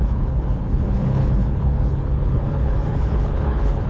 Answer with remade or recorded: remade